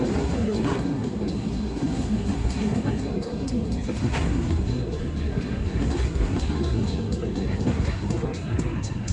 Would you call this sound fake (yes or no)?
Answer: yes